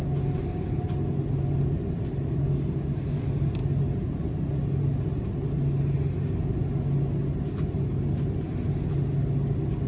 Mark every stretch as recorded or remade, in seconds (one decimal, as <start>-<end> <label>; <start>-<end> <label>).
0.0-9.9 recorded